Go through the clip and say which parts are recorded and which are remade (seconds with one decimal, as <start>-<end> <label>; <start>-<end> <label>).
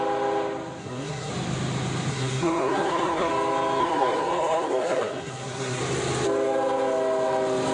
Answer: 0.0-0.8 recorded; 0.8-1.3 remade; 1.3-2.1 recorded; 2.1-3.3 remade; 3.3-3.8 recorded; 3.8-5.8 remade; 5.8-7.7 recorded